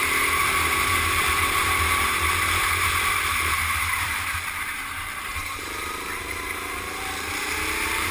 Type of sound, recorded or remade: remade